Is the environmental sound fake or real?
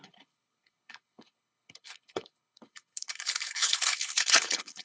fake